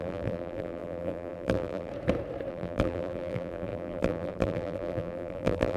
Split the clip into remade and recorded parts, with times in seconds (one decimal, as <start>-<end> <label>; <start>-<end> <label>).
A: 0.0-1.9 remade; 1.9-2.5 recorded; 2.5-5.8 remade